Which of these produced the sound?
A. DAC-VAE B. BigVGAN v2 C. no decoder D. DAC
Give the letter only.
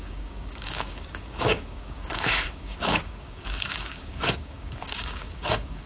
D